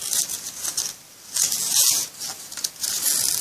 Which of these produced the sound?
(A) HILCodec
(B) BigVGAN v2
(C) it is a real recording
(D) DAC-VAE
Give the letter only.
C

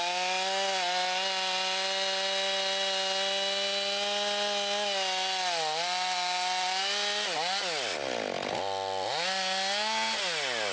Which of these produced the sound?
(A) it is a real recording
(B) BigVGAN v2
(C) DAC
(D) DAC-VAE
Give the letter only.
A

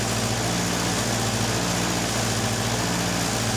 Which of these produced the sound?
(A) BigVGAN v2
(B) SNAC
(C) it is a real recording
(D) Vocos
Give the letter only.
C